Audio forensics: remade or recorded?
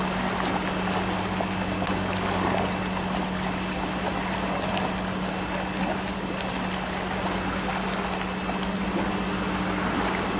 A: recorded